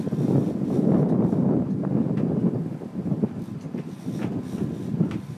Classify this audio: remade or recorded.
recorded